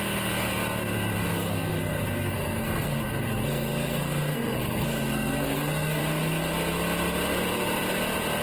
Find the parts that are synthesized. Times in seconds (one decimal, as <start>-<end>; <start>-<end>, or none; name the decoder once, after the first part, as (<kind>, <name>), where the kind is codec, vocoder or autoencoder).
1.3-6.0 (codec, SNAC)